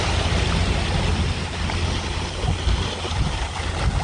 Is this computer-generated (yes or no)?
no